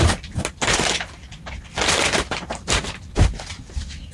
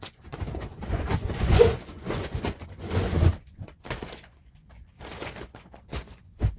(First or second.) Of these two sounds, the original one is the first